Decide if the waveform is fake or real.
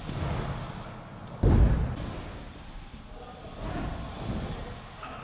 real